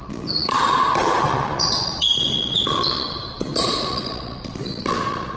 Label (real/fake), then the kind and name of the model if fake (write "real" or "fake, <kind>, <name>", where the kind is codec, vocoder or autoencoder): fake, vocoder, Vocos